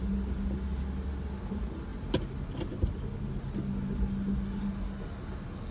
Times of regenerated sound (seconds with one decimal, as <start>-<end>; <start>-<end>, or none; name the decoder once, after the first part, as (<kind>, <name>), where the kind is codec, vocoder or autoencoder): none